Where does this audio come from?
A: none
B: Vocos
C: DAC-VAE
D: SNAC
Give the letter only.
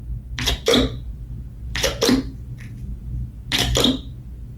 A